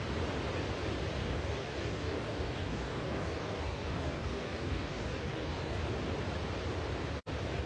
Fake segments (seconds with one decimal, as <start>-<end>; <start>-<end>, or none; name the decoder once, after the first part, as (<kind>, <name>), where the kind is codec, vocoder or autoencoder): 1.2-5.8 (codec, DAC)

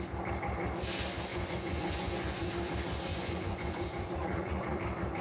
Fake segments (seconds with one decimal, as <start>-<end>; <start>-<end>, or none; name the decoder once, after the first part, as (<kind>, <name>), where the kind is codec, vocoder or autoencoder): 1.3-2.5 (vocoder, Vocos); 3.1-4.8

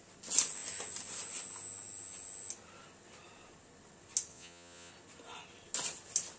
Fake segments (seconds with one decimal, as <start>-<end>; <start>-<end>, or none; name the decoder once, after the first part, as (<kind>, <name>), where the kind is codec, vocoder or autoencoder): 4.3-4.9 (vocoder, Vocos)

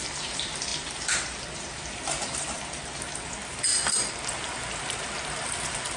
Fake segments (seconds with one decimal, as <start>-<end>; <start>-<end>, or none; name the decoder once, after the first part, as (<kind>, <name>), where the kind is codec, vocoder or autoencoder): 0.0-3.7 (vocoder, BigVGAN v2); 4.3-6.0